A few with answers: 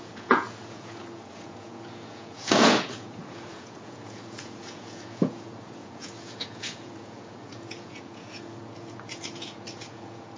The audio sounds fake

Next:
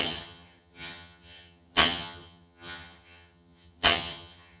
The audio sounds fake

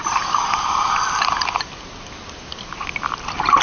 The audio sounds real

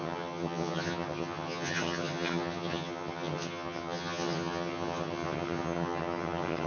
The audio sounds fake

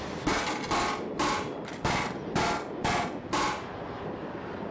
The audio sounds real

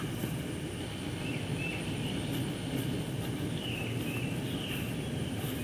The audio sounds real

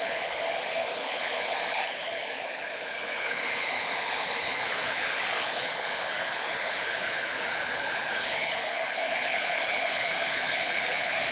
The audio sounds fake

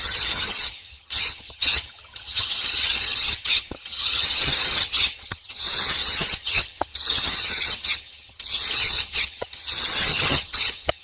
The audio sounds fake